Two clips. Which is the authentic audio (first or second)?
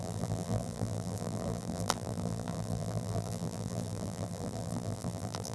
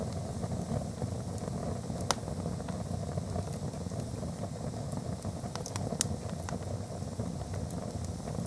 second